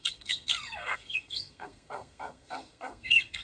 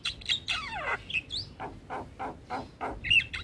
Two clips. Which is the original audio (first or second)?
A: second